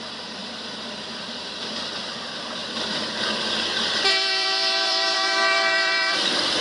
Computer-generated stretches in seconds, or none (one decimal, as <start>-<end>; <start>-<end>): 0.4-1.4; 2.6-6.6